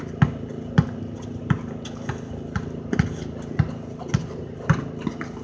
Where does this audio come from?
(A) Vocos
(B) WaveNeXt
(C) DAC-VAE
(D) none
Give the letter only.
D